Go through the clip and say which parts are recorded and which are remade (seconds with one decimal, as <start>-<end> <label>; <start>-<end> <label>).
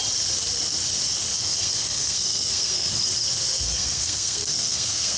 0.0-1.3 recorded; 1.3-2.9 remade; 2.9-3.5 recorded; 3.5-5.2 remade